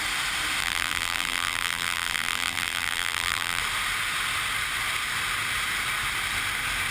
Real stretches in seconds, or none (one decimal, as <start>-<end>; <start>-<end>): 0.0-0.6; 3.6-6.9